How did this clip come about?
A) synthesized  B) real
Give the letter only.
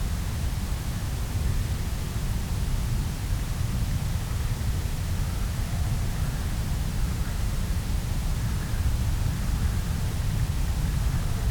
B